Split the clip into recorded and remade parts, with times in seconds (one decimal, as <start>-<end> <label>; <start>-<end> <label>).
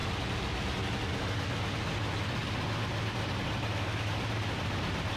0.0-5.2 recorded